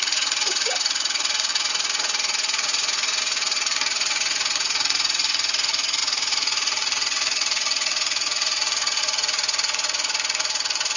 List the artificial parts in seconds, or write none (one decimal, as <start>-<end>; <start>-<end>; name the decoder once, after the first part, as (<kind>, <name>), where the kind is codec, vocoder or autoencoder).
0.0-11.0 (vocoder, Vocos)